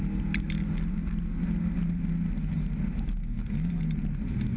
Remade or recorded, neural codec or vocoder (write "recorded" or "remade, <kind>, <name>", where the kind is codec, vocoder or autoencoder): recorded